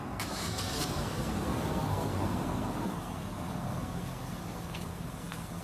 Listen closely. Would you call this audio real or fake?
fake